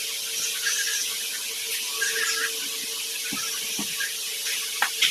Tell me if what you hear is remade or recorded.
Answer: recorded